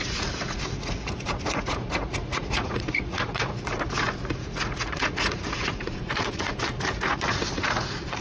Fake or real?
fake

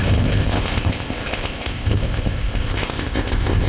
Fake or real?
fake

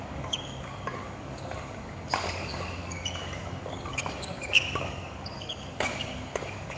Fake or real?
fake